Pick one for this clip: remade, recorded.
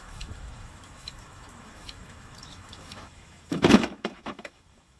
remade